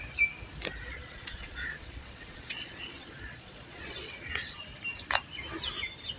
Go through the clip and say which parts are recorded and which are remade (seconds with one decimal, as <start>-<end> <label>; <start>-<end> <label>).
0.0-0.9 recorded; 0.9-4.6 remade; 4.6-6.2 recorded